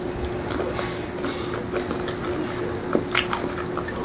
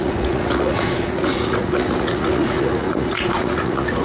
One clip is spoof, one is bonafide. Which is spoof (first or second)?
second